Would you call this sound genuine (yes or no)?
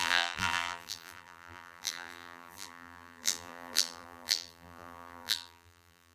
no